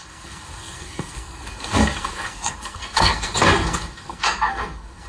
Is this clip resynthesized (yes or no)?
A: yes